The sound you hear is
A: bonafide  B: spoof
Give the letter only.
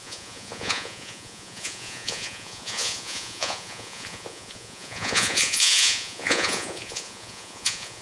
B